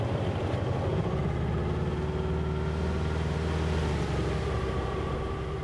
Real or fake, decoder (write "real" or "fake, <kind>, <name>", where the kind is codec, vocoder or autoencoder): real